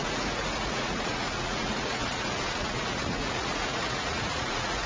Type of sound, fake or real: fake